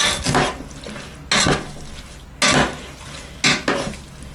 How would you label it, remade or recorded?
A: recorded